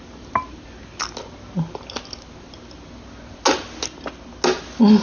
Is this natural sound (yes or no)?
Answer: yes